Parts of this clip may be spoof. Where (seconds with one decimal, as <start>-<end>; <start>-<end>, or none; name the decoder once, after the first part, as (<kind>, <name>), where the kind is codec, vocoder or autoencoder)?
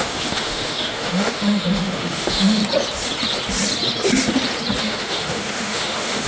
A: 0.0-2.6 (autoencoder, DAC-VAE); 4.8-6.3